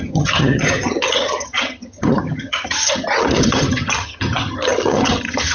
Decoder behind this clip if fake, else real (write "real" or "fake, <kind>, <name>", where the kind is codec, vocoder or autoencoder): fake, vocoder, HiFi-GAN